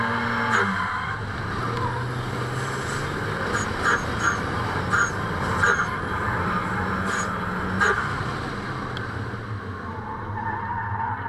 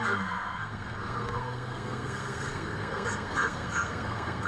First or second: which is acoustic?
first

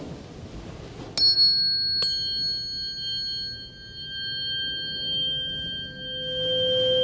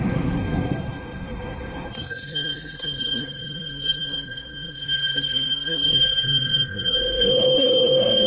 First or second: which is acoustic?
first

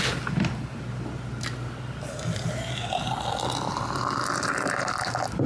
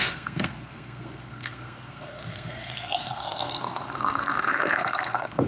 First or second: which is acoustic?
first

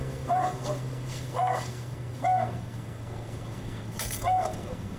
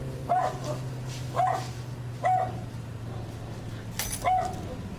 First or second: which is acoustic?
second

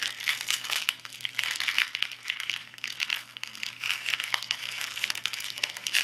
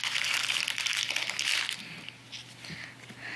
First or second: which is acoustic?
second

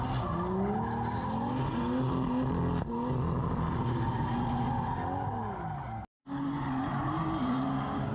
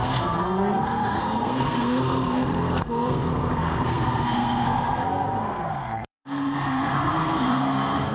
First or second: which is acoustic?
first